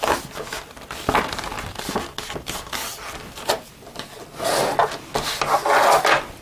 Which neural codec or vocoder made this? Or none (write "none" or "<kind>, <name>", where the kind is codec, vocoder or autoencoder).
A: none